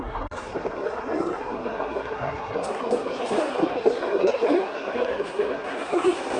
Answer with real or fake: fake